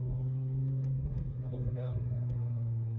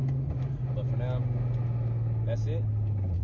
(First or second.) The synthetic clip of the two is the first